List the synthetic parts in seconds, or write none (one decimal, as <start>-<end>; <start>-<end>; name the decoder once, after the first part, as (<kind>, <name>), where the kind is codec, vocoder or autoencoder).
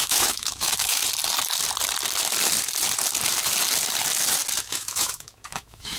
0.0-1.0 (autoencoder, DAC-VAE); 4.6-6.0